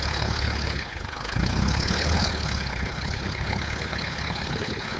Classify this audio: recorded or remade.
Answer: remade